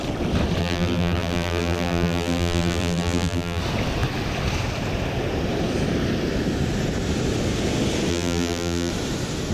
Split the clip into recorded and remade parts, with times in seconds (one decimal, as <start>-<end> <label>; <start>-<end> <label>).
0.0-0.6 recorded; 0.6-3.6 remade; 3.6-8.1 recorded; 8.1-8.9 remade; 8.9-9.5 recorded